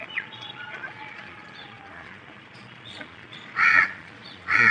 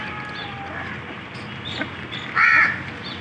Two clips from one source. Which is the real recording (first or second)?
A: second